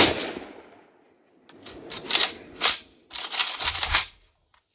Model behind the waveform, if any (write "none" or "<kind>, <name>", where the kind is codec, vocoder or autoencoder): none